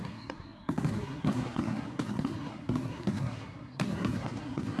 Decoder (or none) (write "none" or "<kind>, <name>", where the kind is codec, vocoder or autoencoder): codec, SNAC